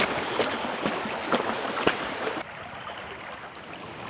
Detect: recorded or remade recorded